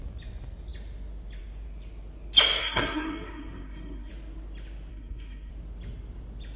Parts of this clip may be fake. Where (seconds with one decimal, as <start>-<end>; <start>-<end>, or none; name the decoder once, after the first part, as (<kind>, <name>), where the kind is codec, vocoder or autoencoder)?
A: 2.6-4.1 (codec, SNAC); 4.9-5.5